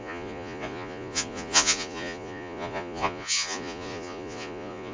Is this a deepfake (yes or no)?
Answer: yes